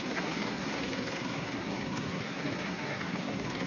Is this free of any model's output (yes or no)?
no